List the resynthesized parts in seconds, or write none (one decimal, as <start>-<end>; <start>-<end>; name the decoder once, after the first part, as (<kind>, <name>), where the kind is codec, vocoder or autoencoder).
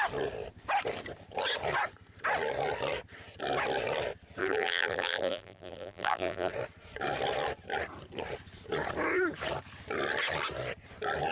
4.4-6.5 (vocoder, BigVGAN v2)